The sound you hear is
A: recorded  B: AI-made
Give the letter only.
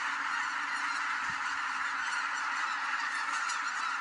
A